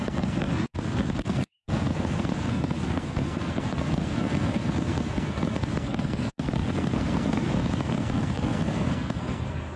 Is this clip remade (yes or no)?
yes